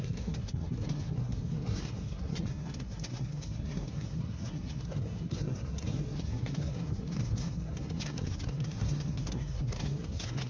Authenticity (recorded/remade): remade